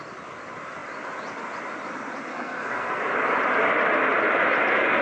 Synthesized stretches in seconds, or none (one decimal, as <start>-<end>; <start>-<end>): 2.3-3.0